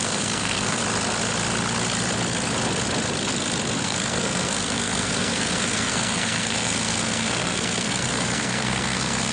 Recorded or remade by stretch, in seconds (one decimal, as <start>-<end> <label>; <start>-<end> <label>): 0.0-0.8 remade; 0.8-3.8 recorded; 3.8-9.3 remade